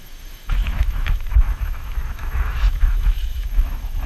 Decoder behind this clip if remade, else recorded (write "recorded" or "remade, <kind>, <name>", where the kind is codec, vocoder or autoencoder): remade, autoencoder, DAC-VAE